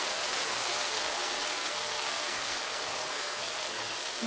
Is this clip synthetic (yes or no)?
yes